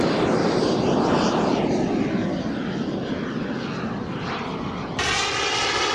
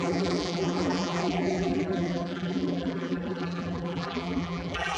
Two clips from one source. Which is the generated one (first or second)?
second